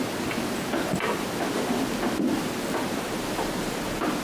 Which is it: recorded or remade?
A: recorded